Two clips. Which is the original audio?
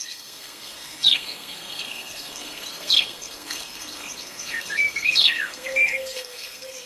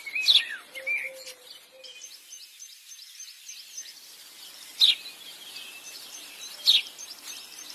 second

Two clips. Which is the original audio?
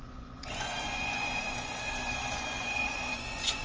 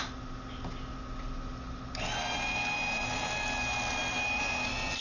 second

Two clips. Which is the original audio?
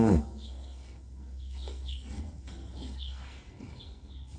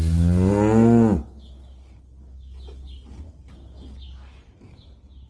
second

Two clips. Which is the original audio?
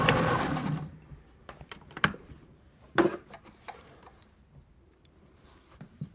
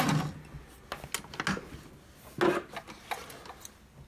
second